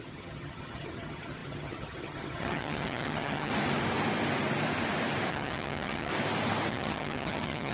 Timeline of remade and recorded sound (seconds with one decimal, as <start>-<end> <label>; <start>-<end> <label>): 0.0-3.5 remade; 3.5-5.3 recorded; 5.3-6.1 remade; 6.1-6.7 recorded; 6.7-7.7 remade